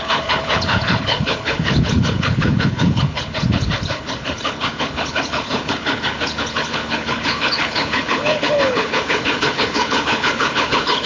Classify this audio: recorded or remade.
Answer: remade